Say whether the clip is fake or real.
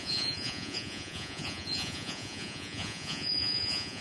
fake